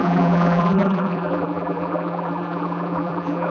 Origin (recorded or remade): remade